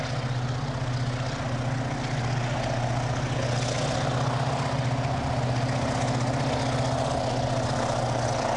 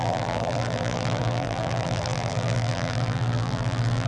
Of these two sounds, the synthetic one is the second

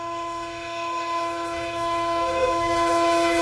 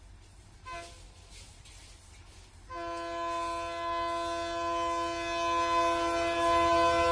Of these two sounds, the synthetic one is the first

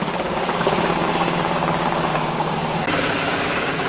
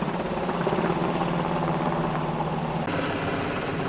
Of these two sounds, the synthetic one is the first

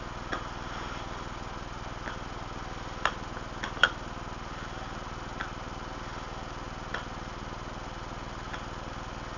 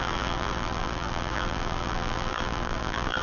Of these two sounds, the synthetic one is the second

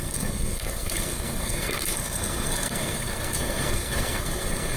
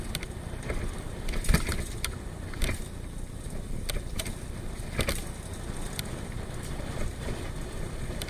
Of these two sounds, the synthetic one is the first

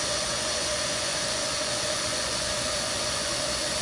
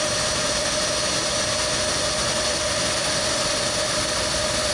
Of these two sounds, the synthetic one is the first